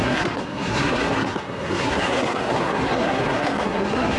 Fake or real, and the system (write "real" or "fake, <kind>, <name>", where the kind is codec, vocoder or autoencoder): fake, codec, SNAC